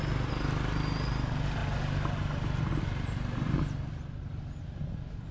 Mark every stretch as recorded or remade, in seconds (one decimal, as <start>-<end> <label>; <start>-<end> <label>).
0.0-5.3 recorded